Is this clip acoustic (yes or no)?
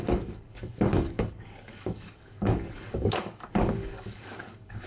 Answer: no